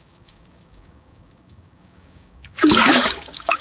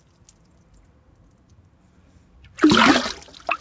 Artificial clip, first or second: first